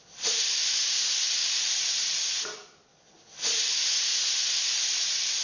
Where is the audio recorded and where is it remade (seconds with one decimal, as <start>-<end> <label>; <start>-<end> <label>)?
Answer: 0.0-5.4 recorded